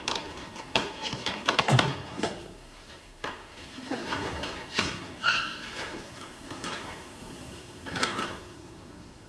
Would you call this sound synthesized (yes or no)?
yes